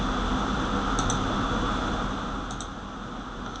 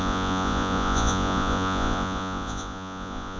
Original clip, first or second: first